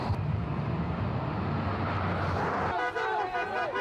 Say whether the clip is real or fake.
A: real